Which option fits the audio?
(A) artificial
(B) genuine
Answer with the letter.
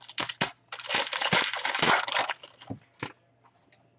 B